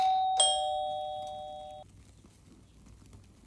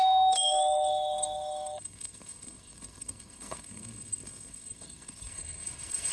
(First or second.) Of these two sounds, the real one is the first